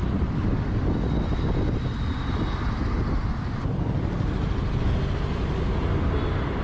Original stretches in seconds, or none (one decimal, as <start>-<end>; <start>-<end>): 0.0-6.6